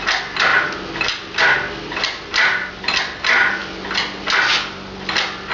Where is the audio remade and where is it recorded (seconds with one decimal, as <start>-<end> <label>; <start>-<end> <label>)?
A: 0.0-5.5 recorded